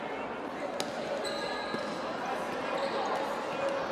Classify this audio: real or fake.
real